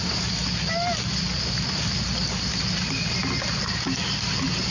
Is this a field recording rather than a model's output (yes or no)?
yes